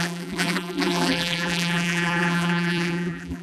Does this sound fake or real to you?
fake